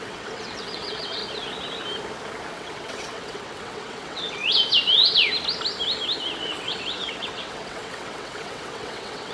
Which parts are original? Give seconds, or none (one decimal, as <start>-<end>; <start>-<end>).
1.2-2.5; 4.4-6.4

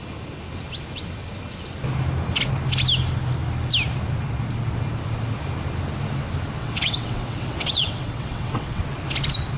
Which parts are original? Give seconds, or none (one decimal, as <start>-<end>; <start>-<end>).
0.0-6.6; 8.8-9.6

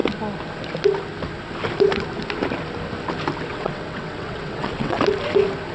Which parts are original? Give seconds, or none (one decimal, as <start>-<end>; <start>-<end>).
0.0-3.5; 5.0-5.7

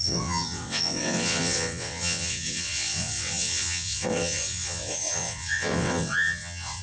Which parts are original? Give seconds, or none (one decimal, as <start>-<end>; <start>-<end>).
none